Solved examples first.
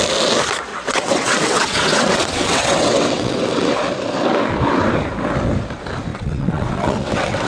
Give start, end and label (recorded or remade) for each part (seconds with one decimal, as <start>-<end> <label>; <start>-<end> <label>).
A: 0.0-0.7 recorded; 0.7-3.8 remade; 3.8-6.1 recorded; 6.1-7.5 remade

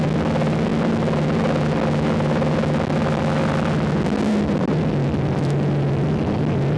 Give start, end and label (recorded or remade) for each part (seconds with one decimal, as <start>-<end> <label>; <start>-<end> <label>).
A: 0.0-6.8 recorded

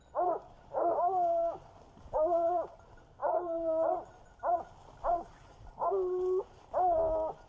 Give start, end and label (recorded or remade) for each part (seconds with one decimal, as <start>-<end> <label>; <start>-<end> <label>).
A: 0.0-7.5 recorded

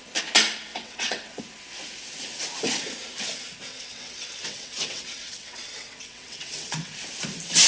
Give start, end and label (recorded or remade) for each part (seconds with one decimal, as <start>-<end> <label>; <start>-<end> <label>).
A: 0.0-0.7 recorded; 0.7-1.4 remade; 1.4-3.7 recorded; 3.7-6.9 remade; 6.9-7.7 recorded

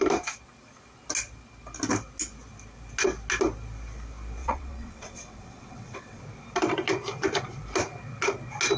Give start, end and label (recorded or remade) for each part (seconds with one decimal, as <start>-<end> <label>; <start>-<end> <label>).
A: 0.0-4.4 recorded; 4.4-6.2 remade; 6.2-8.8 recorded

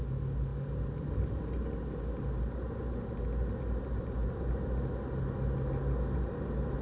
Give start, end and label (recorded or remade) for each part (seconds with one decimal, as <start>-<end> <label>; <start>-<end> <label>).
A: 0.0-6.8 recorded

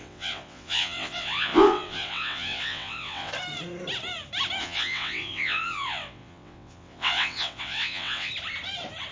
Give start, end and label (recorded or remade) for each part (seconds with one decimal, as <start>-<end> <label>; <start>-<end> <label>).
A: 0.0-3.3 remade; 3.3-4.6 recorded; 4.6-8.3 remade; 8.3-9.1 recorded